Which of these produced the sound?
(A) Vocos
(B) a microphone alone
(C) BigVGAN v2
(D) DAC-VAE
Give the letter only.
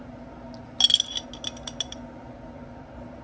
B